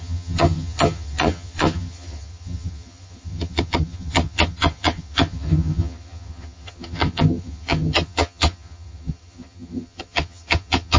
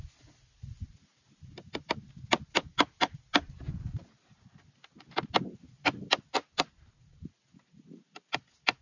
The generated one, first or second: first